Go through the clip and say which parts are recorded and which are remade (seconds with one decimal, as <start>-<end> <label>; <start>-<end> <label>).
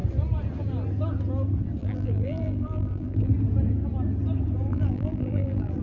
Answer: 0.0-1.8 recorded; 1.8-3.3 remade; 3.3-4.7 recorded; 4.7-5.8 remade